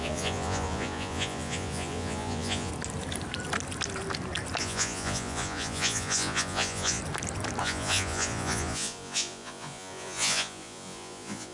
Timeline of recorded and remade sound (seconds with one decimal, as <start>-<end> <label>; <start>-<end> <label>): 0.0-2.7 remade; 2.7-4.6 recorded; 4.6-7.0 remade; 7.0-7.6 recorded; 7.6-11.5 remade